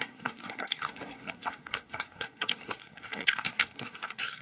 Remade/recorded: remade